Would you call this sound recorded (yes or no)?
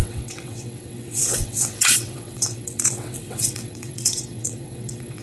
no